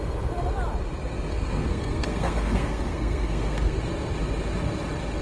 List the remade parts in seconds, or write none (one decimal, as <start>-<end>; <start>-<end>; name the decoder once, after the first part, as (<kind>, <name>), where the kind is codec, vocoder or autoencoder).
1.3-3.8 (codec, SNAC)